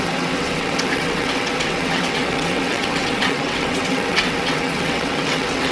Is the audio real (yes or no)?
no